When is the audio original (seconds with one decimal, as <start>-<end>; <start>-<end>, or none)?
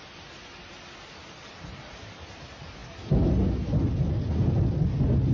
0.0-5.3